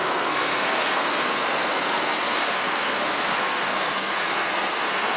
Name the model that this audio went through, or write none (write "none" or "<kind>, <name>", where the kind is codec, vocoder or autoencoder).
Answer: codec, SNAC